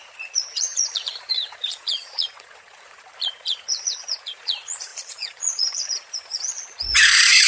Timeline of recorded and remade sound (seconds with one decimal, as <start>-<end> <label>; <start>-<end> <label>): 0.0-7.5 remade